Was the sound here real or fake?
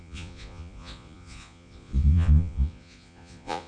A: fake